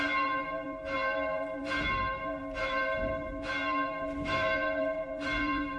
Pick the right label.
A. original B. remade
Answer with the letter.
B